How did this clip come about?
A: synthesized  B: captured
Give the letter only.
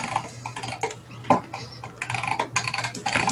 B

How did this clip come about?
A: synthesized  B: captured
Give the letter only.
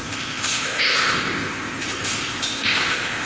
A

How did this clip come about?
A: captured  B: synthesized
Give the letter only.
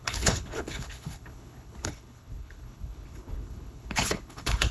B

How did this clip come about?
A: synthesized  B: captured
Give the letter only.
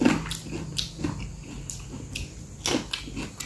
B